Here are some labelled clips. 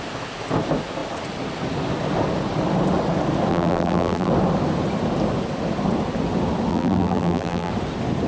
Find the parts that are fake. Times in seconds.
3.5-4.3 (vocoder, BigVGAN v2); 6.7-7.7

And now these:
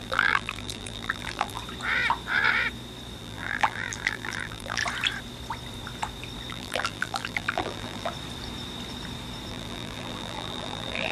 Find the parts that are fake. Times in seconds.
0.0-1.6 (vocoder, BigVGAN v2); 3.2-4.8; 6.5-8.1; 9.5-11.1

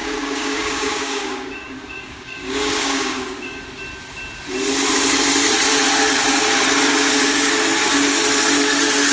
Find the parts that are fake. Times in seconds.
0.0-3.6 (codec, DAC); 6.9-7.5